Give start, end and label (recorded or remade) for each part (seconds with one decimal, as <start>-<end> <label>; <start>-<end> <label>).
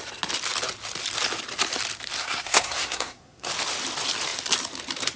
0.0-2.2 recorded; 2.2-3.5 remade; 3.5-5.2 recorded